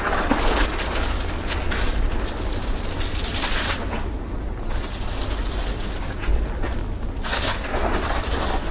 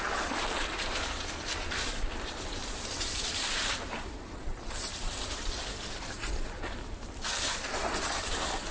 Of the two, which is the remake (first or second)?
second